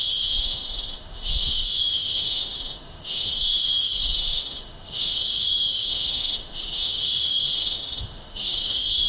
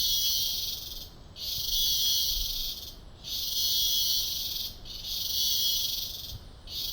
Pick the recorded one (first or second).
second